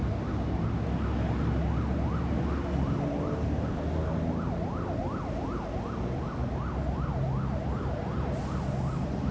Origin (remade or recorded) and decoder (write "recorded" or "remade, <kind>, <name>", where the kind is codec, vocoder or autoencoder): recorded